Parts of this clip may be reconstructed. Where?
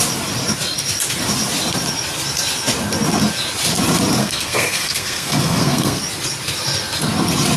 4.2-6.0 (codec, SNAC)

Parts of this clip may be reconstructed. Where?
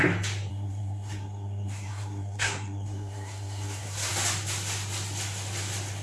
0.5-4.1 (codec, SNAC)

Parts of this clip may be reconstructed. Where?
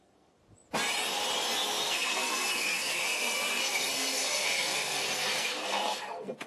0.0-0.4 (codec, SNAC); 1.8-6.5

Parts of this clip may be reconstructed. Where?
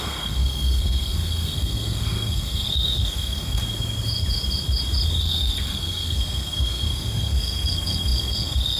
0.0-3.6 (codec, SNAC); 5.2-8.8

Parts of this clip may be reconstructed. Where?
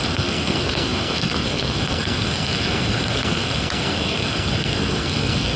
0.0-5.6 (codec, SNAC)